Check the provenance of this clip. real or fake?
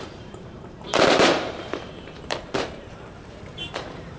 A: fake